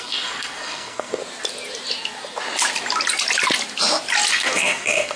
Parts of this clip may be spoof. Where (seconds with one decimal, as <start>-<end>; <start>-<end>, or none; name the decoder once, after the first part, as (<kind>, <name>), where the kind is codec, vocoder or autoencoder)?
0.0-1.2 (codec, SNAC); 4.3-5.2